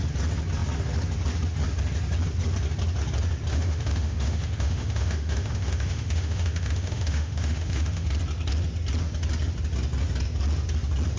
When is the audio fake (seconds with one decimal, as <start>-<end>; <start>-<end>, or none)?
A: 3.5-8.1